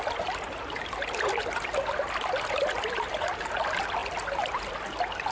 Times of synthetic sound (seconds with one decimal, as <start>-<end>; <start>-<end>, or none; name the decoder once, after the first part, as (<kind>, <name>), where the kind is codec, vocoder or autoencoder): none